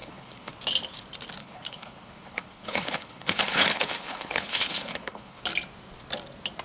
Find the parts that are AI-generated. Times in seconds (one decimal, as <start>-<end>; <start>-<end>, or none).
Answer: 0.0-0.5; 1.4-5.4